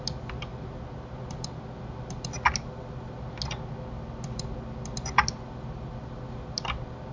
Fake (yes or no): no